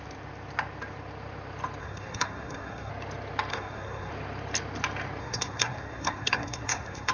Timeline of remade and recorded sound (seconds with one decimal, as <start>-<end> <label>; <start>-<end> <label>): 0.0-1.8 recorded; 1.8-2.9 remade; 2.9-3.5 recorded; 3.5-4.1 remade; 4.1-5.2 recorded; 5.2-7.1 remade